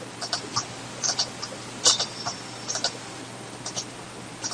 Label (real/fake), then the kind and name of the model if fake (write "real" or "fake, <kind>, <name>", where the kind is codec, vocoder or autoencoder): real